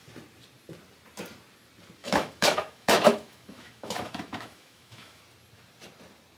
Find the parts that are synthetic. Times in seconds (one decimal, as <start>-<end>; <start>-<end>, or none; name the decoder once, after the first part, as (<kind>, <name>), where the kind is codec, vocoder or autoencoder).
2.0-5.2 (autoencoder, DAC-VAE)

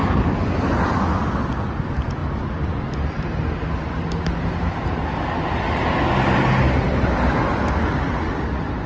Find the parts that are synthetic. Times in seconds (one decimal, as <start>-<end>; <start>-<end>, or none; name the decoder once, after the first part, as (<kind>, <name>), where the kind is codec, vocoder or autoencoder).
none